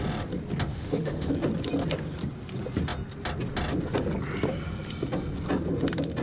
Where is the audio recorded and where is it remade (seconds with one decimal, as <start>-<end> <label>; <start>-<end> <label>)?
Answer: 0.0-0.7 recorded; 0.7-1.3 remade; 1.3-6.2 recorded